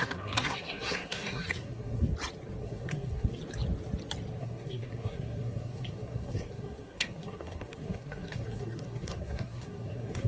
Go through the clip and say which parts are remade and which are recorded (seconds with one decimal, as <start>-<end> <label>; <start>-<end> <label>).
0.0-2.1 remade; 2.1-2.6 recorded; 2.6-3.4 remade; 3.4-4.4 recorded; 4.4-10.3 remade